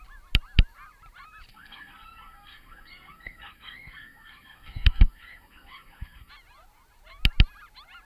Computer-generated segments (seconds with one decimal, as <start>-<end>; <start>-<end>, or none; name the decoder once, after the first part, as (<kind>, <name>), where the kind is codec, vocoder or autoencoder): 1.5-6.3 (codec, SNAC)